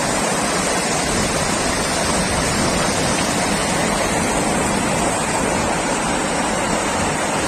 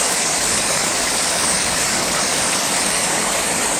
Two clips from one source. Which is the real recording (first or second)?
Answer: first